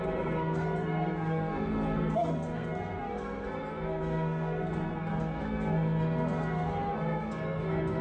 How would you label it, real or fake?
fake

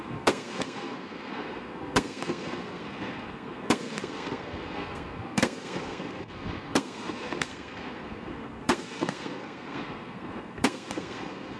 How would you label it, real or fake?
fake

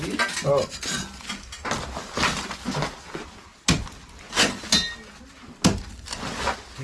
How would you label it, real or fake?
real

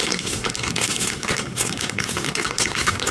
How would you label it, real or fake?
fake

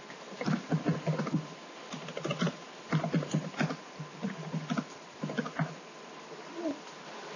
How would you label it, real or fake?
real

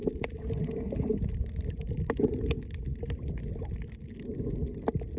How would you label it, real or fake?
real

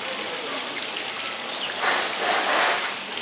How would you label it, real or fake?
real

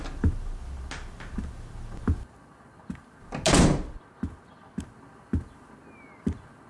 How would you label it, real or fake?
real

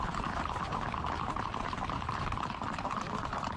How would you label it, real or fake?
real